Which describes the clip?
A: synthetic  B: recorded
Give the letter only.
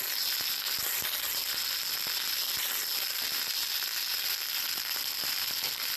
B